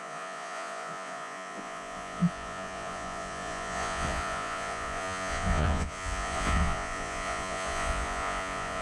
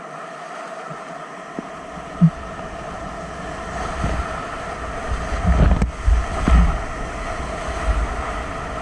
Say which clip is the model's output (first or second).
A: first